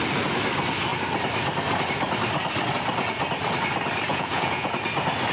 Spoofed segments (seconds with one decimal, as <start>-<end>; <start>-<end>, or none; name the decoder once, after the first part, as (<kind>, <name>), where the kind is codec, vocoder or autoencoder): 4.1-4.7 (vocoder, Vocos)